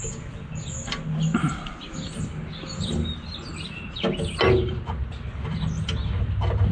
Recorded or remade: recorded